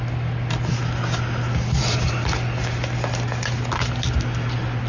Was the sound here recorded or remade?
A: recorded